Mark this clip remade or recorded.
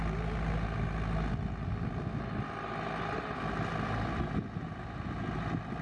recorded